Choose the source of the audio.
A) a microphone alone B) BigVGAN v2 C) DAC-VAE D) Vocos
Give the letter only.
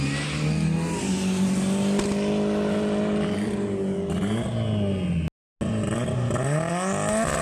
A